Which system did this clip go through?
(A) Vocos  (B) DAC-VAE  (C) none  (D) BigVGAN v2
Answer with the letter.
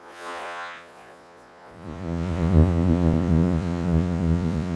A